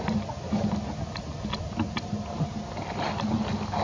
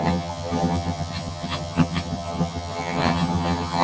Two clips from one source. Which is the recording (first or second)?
first